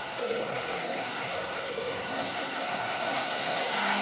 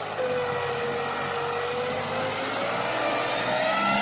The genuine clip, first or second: second